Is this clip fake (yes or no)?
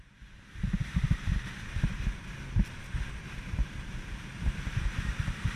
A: no